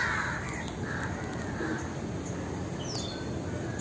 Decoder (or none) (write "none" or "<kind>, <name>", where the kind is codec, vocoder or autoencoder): none